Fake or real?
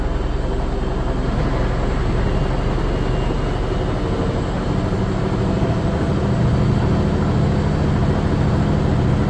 real